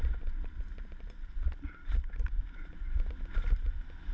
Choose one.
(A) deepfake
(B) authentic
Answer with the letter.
B